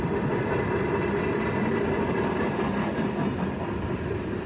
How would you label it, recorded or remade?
recorded